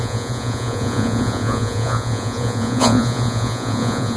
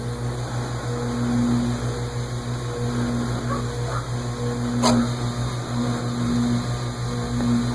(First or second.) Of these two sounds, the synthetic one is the first